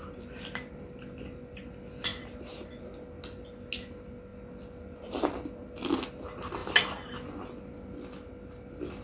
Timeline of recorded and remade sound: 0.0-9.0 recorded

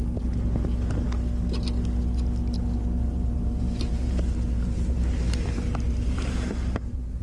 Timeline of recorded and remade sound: 0.0-3.0 recorded; 3.0-7.2 remade

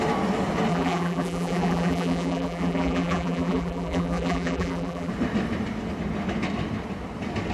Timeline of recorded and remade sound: 0.0-0.7 recorded; 0.7-5.1 remade; 5.1-7.5 recorded

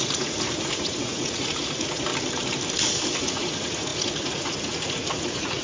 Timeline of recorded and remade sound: 0.0-2.1 remade; 2.1-3.2 recorded; 3.2-5.6 remade